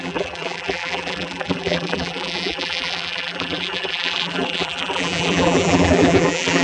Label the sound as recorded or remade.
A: remade